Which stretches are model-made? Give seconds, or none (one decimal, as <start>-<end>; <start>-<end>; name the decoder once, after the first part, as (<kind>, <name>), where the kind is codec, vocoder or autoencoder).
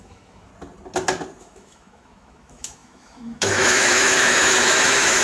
0.0-0.5 (autoencoder, DAC-VAE); 1.4-5.2